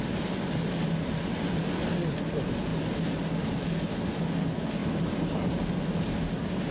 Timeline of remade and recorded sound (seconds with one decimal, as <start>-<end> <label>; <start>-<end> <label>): 0.0-4.8 recorded; 4.8-5.8 remade; 5.8-6.7 recorded